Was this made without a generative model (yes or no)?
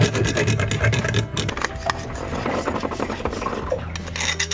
yes